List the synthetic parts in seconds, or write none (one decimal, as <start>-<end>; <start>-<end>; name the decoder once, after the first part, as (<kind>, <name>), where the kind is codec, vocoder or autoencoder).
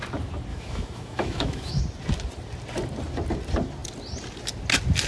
0.5-1.8 (autoencoder, DAC-VAE)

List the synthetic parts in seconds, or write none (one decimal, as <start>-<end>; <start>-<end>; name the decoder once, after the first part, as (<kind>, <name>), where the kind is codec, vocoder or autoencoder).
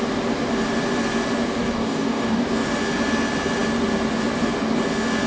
1.6-2.4 (codec, DAC)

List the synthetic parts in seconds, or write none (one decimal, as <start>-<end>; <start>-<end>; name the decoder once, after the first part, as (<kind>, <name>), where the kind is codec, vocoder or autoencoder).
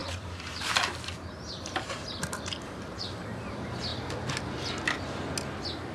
0.0-3.5 (vocoder, BigVGAN v2)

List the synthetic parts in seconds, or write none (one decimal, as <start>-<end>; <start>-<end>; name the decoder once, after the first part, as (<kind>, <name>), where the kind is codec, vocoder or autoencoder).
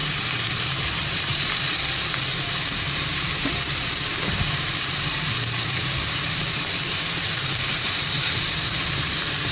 0.0-9.5 (vocoder, BigVGAN v2)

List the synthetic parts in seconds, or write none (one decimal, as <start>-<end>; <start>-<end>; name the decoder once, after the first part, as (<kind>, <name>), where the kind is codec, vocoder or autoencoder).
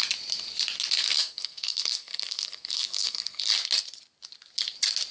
1.0-3.4 (codec, SNAC)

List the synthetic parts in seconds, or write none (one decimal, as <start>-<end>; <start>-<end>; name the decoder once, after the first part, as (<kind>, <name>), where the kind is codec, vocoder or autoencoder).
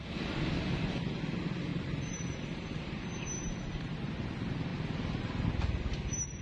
1.7-4.1 (vocoder, BigVGAN v2)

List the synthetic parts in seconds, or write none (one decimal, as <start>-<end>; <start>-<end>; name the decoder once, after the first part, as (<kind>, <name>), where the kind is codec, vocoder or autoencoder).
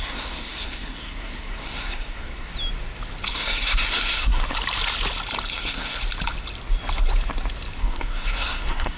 0.0-2.5 (codec, SNAC); 3.3-4.4; 5.5-6.0; 7.8-9.0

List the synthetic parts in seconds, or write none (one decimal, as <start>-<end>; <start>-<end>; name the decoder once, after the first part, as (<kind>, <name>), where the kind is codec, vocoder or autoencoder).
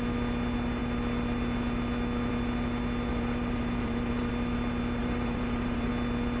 3.1-4.3 (vocoder, BigVGAN v2); 5.0-5.9